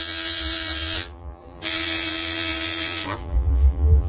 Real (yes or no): no